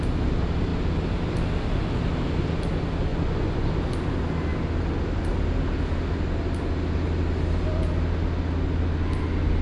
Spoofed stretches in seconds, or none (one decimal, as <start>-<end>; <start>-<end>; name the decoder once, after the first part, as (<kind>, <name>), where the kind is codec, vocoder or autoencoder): 3.1-3.7 (vocoder, Vocos)